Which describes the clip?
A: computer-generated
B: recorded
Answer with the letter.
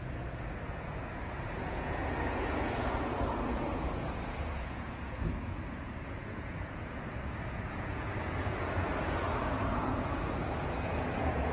A